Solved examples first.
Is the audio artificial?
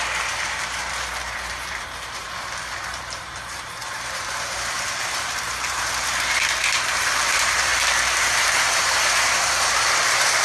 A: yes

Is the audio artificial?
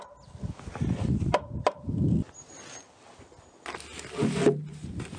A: no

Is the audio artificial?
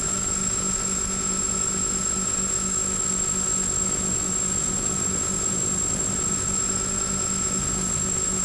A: yes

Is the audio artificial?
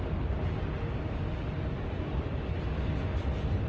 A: no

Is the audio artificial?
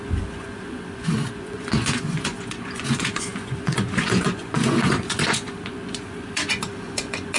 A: yes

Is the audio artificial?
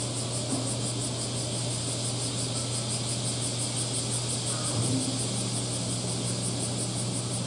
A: no